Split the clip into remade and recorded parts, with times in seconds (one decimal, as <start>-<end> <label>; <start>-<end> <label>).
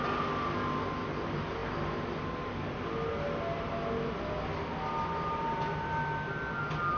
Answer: 0.0-7.0 recorded